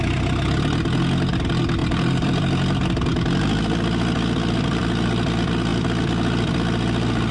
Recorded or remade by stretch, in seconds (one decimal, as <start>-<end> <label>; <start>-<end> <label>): 0.0-1.8 recorded; 1.8-2.4 remade; 2.4-7.3 recorded